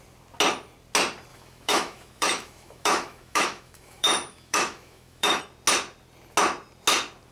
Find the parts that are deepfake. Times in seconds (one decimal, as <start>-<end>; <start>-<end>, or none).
1.3-5.4